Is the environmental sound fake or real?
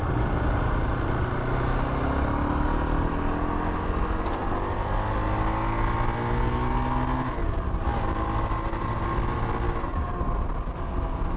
real